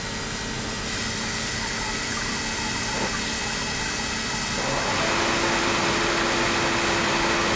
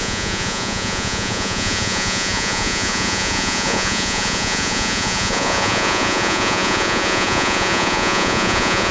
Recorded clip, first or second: first